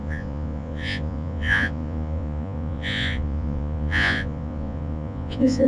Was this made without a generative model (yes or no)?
no